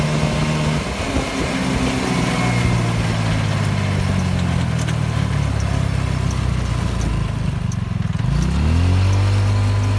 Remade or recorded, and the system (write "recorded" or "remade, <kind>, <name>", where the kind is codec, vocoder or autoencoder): recorded